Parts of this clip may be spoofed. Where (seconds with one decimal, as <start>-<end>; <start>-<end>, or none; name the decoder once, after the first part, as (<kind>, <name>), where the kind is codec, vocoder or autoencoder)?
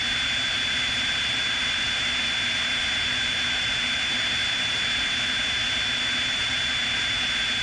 none